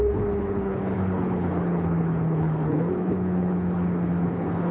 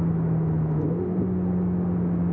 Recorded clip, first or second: second